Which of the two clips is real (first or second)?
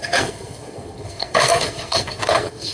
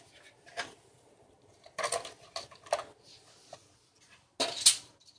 second